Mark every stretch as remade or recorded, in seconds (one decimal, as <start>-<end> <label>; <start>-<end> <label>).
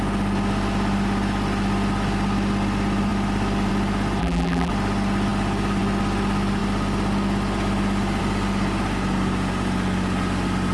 0.0-4.2 recorded; 4.2-4.7 remade; 4.7-10.7 recorded